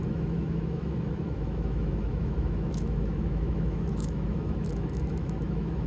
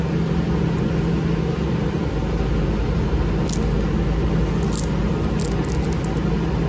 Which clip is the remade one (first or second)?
first